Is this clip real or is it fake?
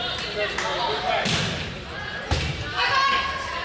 real